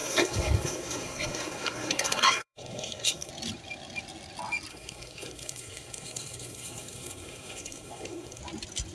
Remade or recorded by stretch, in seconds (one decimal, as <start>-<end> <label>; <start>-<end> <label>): 0.0-3.3 remade; 3.3-4.7 recorded; 4.7-8.4 remade; 8.4-8.9 recorded